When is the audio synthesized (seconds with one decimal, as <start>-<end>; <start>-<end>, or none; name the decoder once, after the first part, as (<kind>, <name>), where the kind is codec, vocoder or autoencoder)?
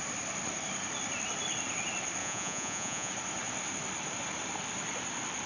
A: 2.2-3.1 (vocoder, Vocos)